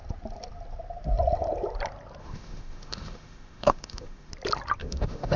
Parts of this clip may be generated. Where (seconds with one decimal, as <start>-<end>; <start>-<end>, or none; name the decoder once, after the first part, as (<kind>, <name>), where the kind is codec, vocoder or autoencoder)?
2.2-4.3 (autoencoder, DAC-VAE); 4.8-5.4